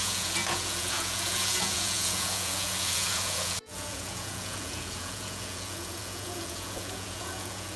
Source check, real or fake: fake